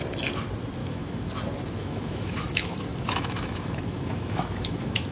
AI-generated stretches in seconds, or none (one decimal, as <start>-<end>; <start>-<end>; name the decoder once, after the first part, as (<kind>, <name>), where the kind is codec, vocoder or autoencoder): 0.8-1.3 (autoencoder, DAC-VAE); 1.8-5.1

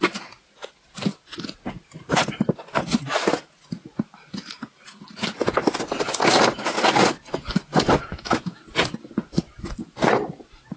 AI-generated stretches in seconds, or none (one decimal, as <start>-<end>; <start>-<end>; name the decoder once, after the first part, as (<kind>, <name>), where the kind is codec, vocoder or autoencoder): 8.1-8.6 (autoencoder, DAC-VAE)

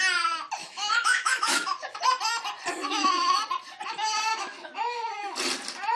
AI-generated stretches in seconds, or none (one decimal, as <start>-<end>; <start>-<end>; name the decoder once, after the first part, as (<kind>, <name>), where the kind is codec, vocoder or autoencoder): 0.6-2.0 (autoencoder, DAC-VAE); 2.8-3.4; 4.3-5.1